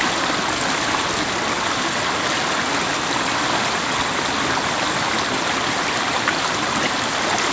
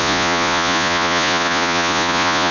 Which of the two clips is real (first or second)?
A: first